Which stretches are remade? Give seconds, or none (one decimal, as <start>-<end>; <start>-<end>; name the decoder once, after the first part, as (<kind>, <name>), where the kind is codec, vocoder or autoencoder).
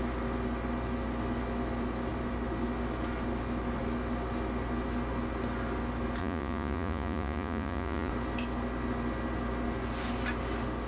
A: 6.2-8.1 (vocoder, Vocos)